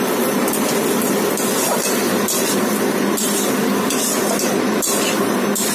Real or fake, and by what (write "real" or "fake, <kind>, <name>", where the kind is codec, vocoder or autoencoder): fake, vocoder, BigVGAN v2